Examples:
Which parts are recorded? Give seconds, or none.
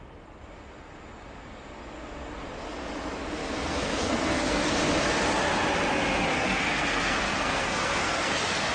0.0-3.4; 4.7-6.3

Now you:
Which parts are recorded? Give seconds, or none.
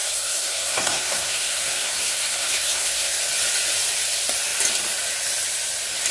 3.2-6.1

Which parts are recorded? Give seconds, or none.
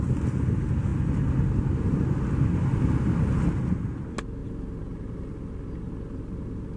0.0-6.8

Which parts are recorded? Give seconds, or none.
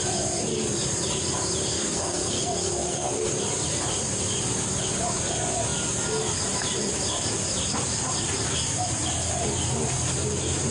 0.0-1.7; 3.4-10.7